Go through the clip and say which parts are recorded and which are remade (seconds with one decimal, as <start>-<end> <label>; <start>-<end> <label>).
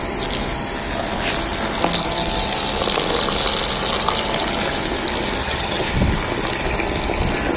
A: 0.0-5.4 recorded; 5.4-5.9 remade; 5.9-7.6 recorded